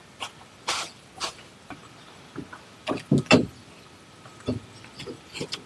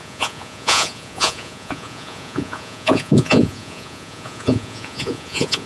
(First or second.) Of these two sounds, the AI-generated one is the second